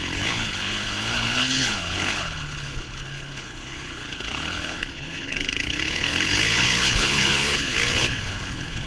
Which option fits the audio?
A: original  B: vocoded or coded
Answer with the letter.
B